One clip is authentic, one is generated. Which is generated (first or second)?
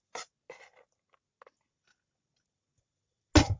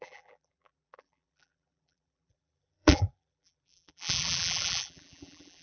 second